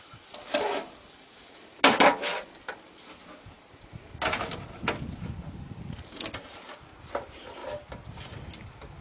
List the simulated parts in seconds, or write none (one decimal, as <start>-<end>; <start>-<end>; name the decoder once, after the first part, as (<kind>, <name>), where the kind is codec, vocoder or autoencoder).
none